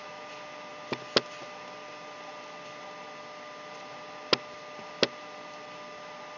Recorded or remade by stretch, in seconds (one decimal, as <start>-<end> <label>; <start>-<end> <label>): 0.0-6.4 recorded